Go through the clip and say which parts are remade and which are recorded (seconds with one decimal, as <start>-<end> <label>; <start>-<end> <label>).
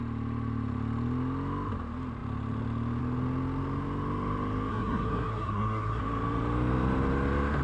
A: 0.0-4.7 recorded; 4.7-6.0 remade; 6.0-7.6 recorded